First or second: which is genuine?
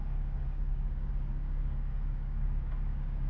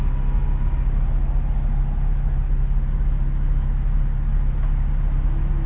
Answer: second